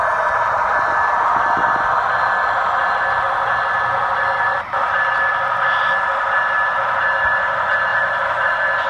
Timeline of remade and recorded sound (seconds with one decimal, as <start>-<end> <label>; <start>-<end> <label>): 0.0-7.9 recorded; 7.9-8.5 remade; 8.5-8.9 recorded